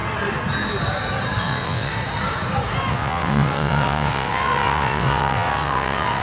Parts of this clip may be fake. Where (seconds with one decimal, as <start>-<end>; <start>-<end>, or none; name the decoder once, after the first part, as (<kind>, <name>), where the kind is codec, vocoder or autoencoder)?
1.4-1.9 (vocoder, WaveNeXt); 2.9-6.2